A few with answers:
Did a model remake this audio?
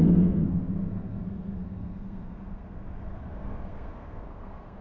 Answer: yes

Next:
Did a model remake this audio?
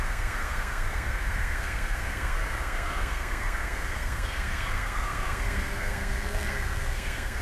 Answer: yes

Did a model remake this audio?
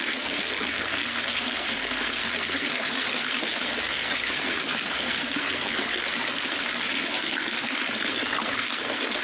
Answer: yes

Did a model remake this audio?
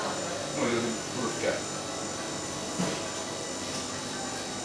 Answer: no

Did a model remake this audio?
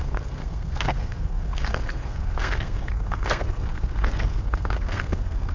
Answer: yes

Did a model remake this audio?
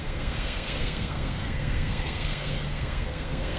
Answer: yes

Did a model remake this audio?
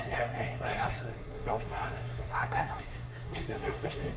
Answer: yes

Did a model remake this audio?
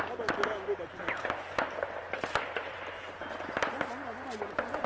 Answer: no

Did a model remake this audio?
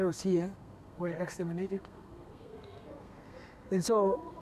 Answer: yes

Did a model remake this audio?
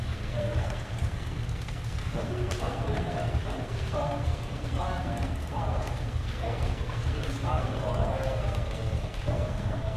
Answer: yes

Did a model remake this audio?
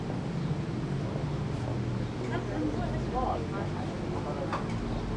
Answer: no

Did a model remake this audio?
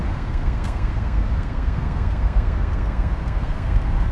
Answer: yes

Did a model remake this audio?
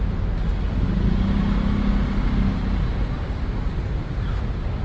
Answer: no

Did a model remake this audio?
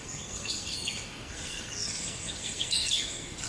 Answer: yes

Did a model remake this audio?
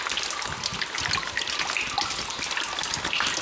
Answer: no